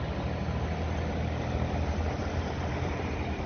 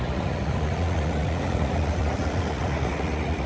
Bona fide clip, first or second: first